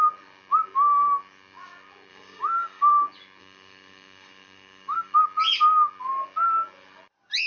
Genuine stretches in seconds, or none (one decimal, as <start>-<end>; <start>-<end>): 0.0-2.1; 2.9-3.4; 5.2-7.5